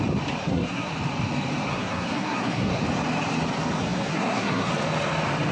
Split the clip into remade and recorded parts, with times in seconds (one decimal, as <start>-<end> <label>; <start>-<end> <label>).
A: 0.0-0.4 recorded; 0.4-0.9 remade; 0.9-1.7 recorded; 1.7-2.8 remade; 2.8-3.8 recorded; 3.8-4.7 remade; 4.7-5.5 recorded